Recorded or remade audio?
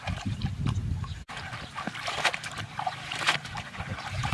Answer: recorded